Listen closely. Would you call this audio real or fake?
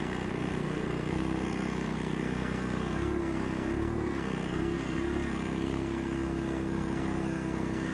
fake